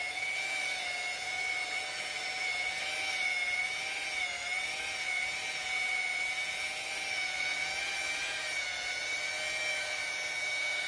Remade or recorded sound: remade